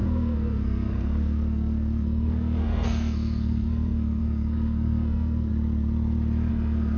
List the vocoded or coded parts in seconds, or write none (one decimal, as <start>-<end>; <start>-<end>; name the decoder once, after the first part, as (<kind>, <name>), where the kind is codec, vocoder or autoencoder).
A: 0.0-5.5 (codec, SNAC); 6.5-7.0